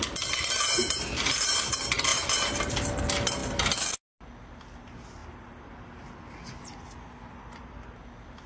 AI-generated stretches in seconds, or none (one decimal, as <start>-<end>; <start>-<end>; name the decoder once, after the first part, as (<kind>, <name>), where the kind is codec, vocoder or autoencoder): none